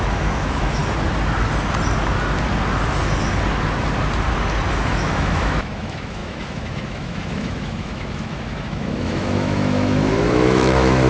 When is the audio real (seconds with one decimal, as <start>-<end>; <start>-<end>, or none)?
0.8-4.7